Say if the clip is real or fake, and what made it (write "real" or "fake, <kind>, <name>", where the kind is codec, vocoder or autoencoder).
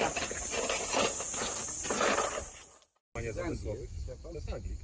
real